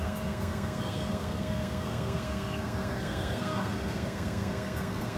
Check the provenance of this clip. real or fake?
fake